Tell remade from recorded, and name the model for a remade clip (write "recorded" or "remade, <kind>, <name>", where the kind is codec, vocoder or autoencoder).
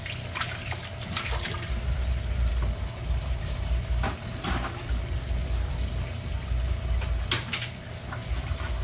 recorded